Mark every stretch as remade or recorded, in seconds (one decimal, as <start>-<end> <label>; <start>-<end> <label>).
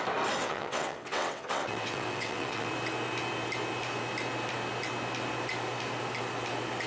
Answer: 0.0-0.4 recorded; 0.4-2.7 remade; 2.7-6.9 recorded